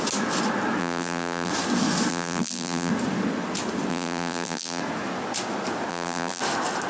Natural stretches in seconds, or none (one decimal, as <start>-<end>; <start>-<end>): 0.0-0.8; 1.5-2.1; 2.9-3.9; 4.8-5.9; 6.4-6.9

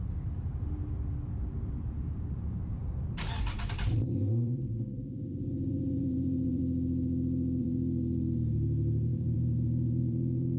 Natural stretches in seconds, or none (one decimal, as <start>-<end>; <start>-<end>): 6.6-7.6

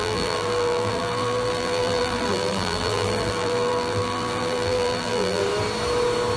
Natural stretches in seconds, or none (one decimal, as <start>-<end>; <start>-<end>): 5.4-6.4

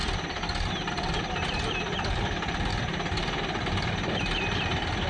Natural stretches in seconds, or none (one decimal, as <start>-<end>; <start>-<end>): 0.0-0.9

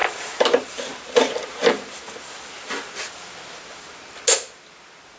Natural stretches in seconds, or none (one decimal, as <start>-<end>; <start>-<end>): 2.1-5.2

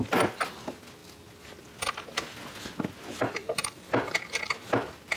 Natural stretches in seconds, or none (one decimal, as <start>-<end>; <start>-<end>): 0.0-3.6; 4.6-5.2

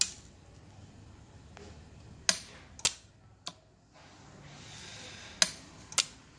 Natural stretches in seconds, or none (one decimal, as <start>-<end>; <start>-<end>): 0.0-6.4